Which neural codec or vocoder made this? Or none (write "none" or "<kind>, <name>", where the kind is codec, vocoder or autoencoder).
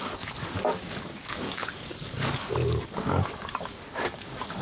codec, DAC